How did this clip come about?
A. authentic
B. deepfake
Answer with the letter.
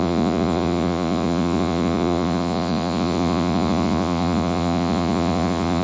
B